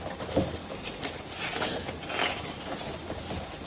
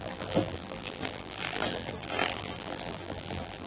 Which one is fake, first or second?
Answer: second